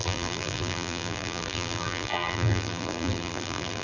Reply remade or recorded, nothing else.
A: remade